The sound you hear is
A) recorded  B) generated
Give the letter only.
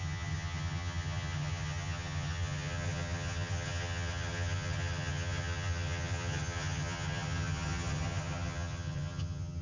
B